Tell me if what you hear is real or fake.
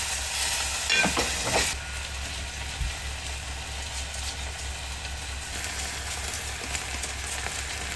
real